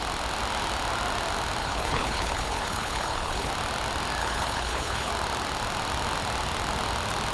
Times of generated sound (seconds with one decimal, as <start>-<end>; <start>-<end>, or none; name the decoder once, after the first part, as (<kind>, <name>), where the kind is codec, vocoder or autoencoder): 1.6-3.5 (codec, HILCodec); 4.2-5.1